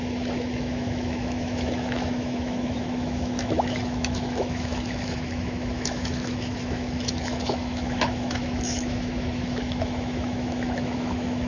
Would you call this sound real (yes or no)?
no